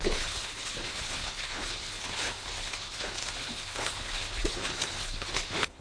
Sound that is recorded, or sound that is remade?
remade